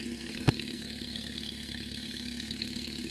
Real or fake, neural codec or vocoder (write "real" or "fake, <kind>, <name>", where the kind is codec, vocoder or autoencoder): fake, codec, SNAC